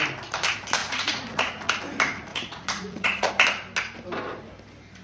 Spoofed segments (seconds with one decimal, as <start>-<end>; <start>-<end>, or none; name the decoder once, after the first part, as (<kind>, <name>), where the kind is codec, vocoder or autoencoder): 0.8-1.7 (vocoder, Vocos); 2.3-3.3

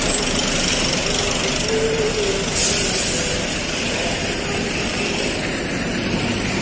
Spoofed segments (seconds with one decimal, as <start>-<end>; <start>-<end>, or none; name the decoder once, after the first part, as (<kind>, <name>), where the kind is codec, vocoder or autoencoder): 0.0-1.0 (vocoder, BigVGAN v2); 4.8-6.6

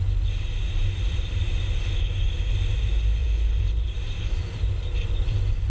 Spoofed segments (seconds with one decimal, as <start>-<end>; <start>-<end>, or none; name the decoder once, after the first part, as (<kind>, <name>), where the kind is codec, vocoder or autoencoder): 3.2-5.7 (vocoder, BigVGAN v2)

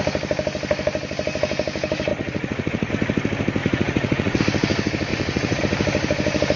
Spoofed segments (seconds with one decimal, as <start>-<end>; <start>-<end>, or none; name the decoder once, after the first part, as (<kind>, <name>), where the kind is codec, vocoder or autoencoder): 2.1-2.9 (vocoder, Vocos); 3.6-4.4; 5.1-5.6

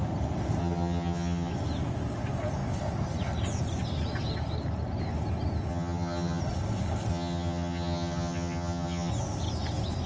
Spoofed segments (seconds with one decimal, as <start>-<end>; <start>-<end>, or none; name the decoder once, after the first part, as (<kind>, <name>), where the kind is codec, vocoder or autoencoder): 0.6-1.5 (vocoder, HiFi-GAN); 5.7-6.4; 7.1-9.1

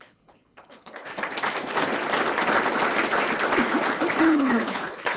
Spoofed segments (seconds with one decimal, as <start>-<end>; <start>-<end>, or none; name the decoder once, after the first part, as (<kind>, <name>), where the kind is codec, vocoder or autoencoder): 0.0-1.1 (codec, HILCodec); 4.2-5.2

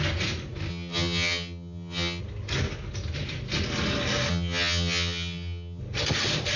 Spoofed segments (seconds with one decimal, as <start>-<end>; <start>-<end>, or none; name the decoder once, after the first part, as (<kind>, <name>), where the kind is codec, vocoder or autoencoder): 0.7-2.2 (vocoder, HiFi-GAN); 4.3-5.8